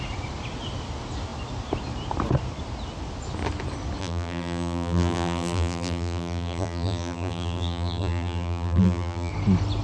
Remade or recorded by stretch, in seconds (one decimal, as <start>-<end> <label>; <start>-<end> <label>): 0.0-4.0 recorded; 4.0-9.3 remade; 9.3-9.8 recorded